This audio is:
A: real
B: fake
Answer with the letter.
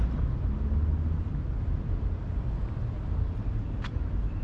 A